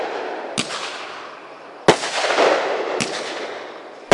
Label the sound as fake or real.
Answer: real